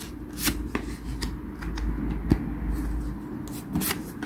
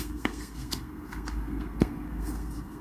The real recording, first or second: first